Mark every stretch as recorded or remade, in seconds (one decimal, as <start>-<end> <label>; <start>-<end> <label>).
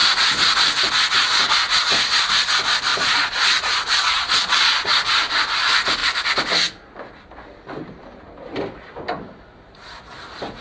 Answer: 0.0-2.9 recorded; 2.9-4.9 remade; 4.9-10.6 recorded